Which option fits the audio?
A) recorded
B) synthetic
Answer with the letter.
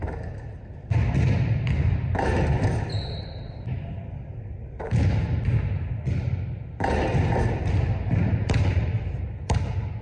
A